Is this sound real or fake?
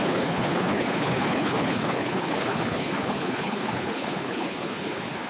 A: fake